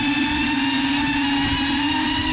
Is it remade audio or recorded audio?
recorded